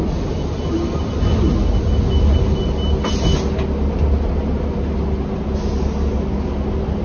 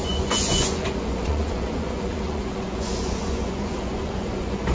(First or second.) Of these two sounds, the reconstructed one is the second